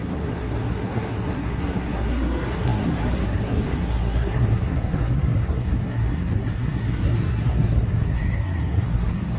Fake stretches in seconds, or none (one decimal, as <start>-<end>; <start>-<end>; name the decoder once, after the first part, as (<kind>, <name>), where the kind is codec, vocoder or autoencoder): 0.0-9.4 (codec, SNAC)